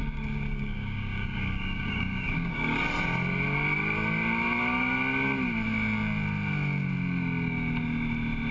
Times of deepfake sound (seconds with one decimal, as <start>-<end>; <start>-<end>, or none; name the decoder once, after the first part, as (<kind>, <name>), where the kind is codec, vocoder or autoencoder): 0.0-2.8 (codec, DAC)